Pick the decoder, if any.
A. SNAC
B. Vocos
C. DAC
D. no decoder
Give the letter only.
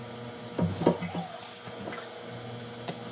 D